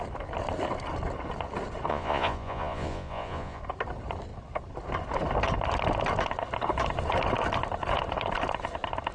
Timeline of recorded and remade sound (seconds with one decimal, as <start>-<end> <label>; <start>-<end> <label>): 0.0-1.9 recorded; 1.9-3.6 remade; 3.6-9.1 recorded